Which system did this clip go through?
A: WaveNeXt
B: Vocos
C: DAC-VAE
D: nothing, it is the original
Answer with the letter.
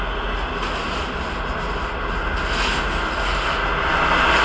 D